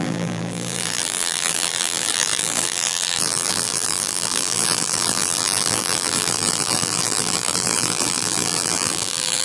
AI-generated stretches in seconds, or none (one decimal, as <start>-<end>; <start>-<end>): 0.0-9.4